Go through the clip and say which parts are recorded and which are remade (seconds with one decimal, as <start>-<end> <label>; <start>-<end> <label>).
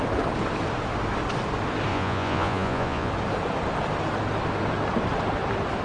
0.0-1.9 recorded; 1.9-3.1 remade; 3.1-5.8 recorded